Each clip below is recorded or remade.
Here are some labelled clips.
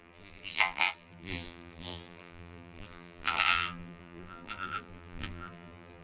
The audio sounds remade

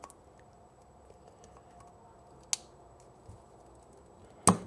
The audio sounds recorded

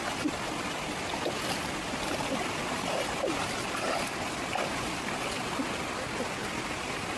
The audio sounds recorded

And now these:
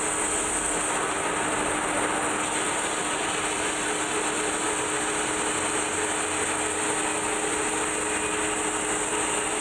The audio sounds recorded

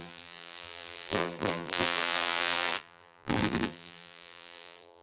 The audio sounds remade